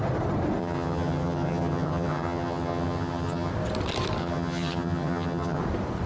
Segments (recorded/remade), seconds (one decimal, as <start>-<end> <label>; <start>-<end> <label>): 0.0-0.6 recorded; 0.6-3.5 remade; 3.5-4.2 recorded; 4.2-5.6 remade; 5.6-6.1 recorded